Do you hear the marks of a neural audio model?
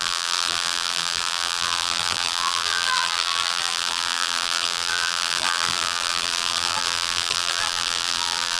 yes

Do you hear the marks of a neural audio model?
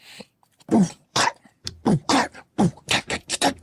yes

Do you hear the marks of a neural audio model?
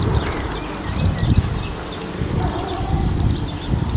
no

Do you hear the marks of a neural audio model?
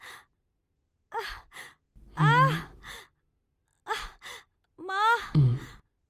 no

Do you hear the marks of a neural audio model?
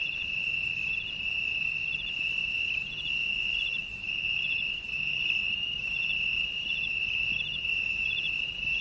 yes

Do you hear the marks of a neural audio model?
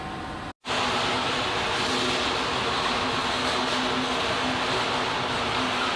no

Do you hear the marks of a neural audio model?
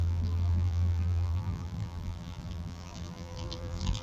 yes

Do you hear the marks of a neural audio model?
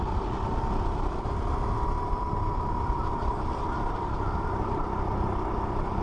no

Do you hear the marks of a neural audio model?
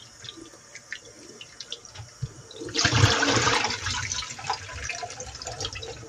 no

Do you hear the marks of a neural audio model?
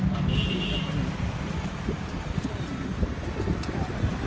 yes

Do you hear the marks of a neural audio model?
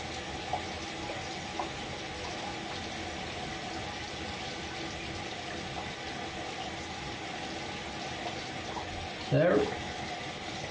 no